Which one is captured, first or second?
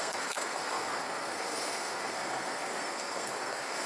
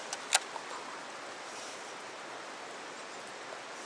second